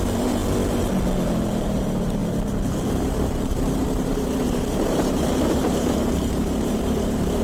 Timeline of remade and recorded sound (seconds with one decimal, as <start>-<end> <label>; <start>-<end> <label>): 0.0-0.4 remade; 0.4-1.6 recorded; 1.6-2.2 remade; 2.2-2.9 recorded; 2.9-7.4 remade